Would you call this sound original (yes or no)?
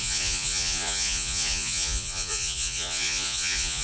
no